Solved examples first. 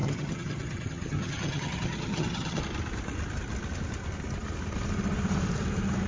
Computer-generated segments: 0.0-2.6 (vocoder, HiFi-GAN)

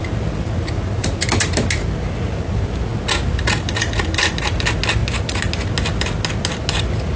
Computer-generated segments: none

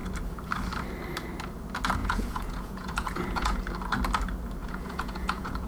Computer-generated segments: 2.0-3.6 (vocoder, Vocos); 4.6-5.7

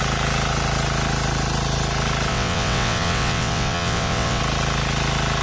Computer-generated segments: 2.3-4.4 (vocoder, WaveNeXt)

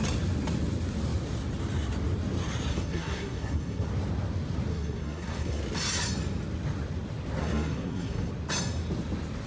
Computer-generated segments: 2.7-3.9 (codec, SNAC); 4.7-5.6; 7.4-8.3

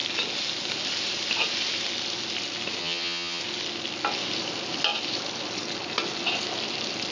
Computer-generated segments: 2.8-3.4 (vocoder, HiFi-GAN)